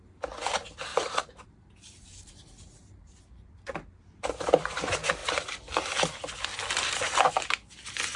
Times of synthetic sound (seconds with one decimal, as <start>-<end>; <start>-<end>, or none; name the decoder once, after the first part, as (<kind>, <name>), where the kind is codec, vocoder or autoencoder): 0.9-4.8 (vocoder, BigVGAN v2); 5.2-6.0